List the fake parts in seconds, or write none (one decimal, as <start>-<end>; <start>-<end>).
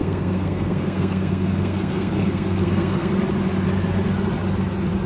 0.0-3.1